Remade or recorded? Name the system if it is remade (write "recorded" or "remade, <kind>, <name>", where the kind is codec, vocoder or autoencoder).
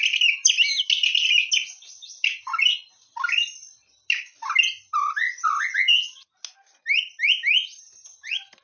recorded